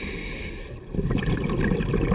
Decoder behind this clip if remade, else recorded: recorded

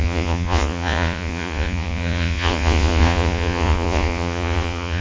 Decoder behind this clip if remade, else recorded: remade, vocoder, Vocos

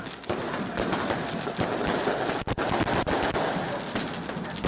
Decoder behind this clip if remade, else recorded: recorded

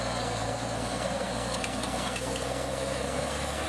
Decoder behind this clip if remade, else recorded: remade, codec, SNAC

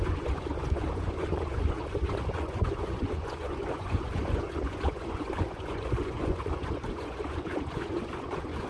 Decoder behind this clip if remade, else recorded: remade, vocoder, Vocos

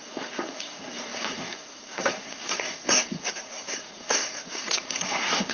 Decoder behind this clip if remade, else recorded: remade, codec, SNAC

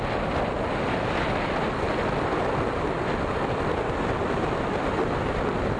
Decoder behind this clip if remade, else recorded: recorded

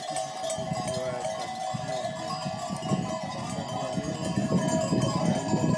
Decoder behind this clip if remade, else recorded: recorded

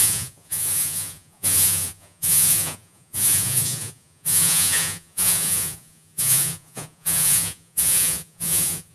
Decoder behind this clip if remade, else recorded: remade, vocoder, Vocos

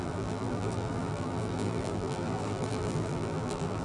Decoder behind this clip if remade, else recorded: remade, vocoder, BigVGAN v2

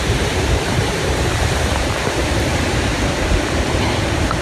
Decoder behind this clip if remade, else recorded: remade, vocoder, BigVGAN v2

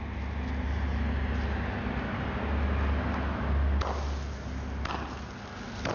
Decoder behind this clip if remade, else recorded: recorded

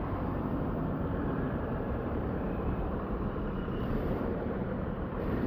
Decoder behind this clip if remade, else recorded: remade, vocoder, BigVGAN v2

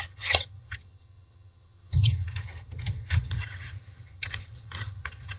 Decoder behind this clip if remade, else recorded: remade, vocoder, HiFi-GAN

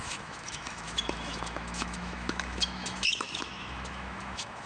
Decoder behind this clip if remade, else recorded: remade, autoencoder, DAC-VAE